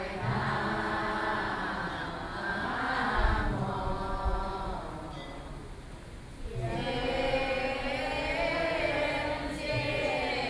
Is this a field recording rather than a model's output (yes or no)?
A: yes